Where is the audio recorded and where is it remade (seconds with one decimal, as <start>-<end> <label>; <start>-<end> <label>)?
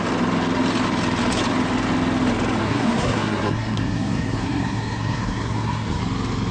0.0-2.6 recorded; 2.6-6.0 remade; 6.0-6.5 recorded